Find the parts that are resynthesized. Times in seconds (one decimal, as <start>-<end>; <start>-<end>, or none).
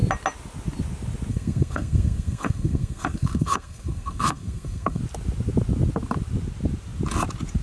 1.3-5.0